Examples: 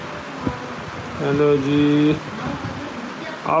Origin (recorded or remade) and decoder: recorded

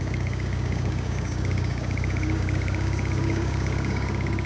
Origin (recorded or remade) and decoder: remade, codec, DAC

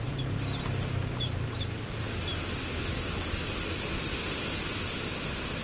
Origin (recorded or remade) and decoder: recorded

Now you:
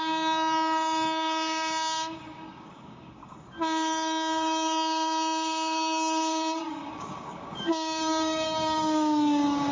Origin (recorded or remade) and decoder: remade, codec, DAC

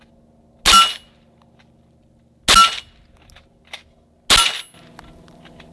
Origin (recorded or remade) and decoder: recorded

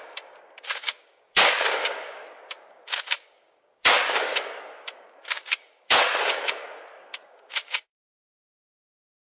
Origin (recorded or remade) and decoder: remade, codec, DAC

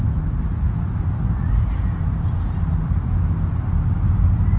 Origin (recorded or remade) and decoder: recorded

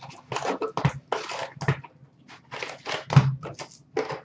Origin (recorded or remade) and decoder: recorded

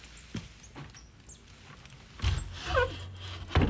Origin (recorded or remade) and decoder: recorded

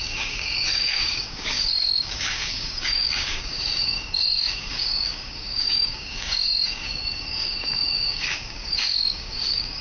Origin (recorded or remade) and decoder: remade, codec, DAC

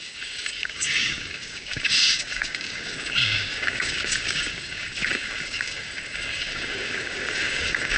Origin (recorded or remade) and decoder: remade, codec, DAC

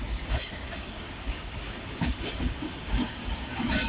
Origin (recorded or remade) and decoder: remade, codec, DAC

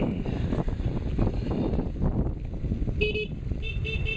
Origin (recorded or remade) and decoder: recorded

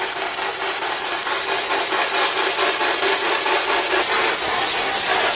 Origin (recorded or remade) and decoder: recorded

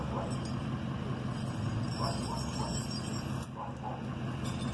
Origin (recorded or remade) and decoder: recorded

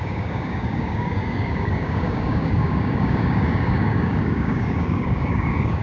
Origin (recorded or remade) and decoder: remade, codec, DAC